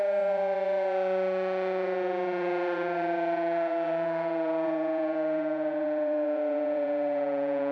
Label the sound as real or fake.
fake